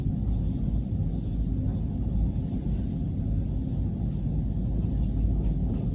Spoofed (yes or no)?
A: no